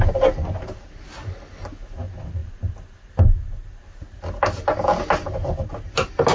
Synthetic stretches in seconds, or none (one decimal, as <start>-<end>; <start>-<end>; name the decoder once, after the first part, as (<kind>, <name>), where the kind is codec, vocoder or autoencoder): none